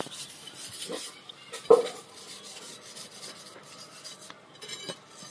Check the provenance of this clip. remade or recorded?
recorded